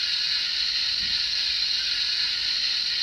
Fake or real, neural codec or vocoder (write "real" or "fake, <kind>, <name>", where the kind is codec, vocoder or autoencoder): real